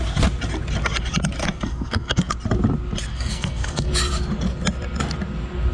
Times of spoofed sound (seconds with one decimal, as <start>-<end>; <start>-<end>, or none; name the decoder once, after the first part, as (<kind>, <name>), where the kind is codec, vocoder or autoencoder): 1.4-2.3 (codec, SNAC); 3.1-3.9